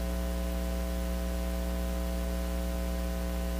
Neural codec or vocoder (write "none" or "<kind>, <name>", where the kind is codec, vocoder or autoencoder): none